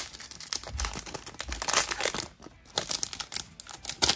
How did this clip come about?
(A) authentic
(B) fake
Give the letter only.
A